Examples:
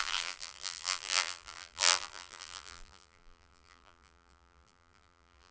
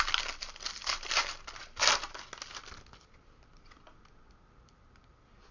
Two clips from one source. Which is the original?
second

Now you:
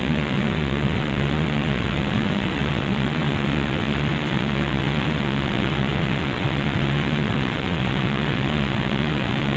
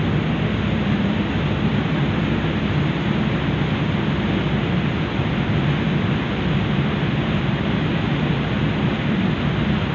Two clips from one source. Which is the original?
second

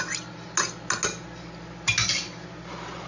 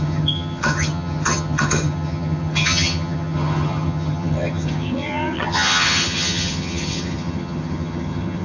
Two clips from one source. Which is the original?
first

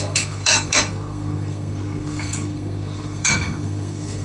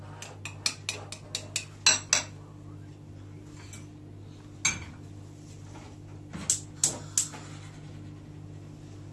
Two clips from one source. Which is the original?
second